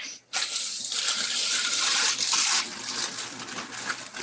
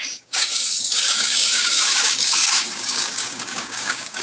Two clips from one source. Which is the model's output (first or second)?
second